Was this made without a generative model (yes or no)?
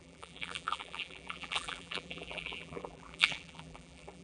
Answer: no